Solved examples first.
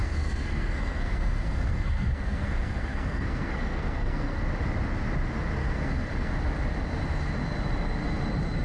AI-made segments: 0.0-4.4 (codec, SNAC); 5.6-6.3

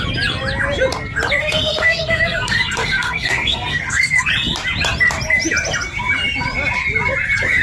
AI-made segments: 1.4-4.3 (codec, SNAC)

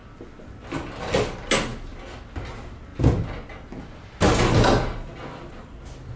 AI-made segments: none

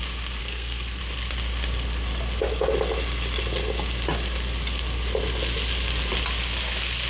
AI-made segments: 0.4-1.0 (codec, SNAC)

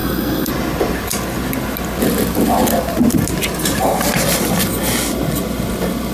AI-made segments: 0.0-0.5 (codec, SNAC)

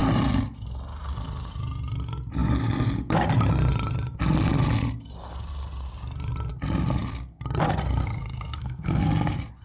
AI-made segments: 8.0-9.1 (codec, SNAC)

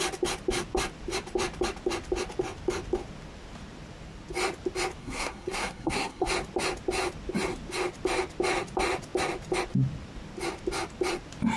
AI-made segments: 5.0-6.3 (codec, SNAC)

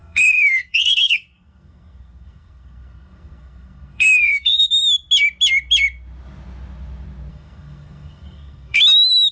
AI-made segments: 0.0-4.7 (codec, SNAC); 7.3-8.8